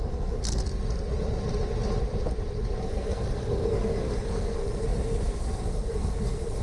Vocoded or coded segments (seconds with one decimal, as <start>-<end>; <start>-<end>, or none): 0.0-0.6; 2.8-6.6